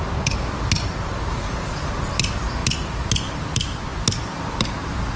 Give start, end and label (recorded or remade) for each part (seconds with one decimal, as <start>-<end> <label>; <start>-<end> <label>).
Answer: 0.0-1.3 recorded; 1.3-1.9 remade; 1.9-5.2 recorded